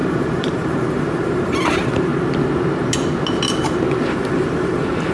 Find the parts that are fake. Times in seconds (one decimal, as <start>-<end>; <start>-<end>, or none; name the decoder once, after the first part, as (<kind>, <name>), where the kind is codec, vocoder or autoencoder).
0.0-2.1 (vocoder, BigVGAN v2); 4.1-5.1